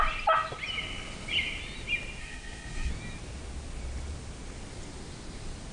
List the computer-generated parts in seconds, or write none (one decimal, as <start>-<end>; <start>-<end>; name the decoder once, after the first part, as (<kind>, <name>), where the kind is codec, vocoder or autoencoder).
2.2-2.9 (codec, SNAC)